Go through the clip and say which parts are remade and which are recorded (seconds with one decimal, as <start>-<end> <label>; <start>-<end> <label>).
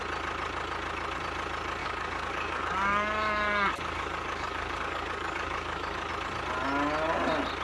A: 0.0-1.8 recorded; 1.8-6.1 remade; 6.1-7.6 recorded